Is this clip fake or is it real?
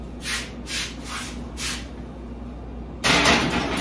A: real